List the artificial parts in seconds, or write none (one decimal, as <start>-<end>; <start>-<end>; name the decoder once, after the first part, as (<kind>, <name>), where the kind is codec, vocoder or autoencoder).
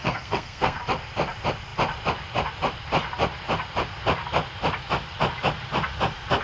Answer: 0.0-0.8 (codec, SNAC)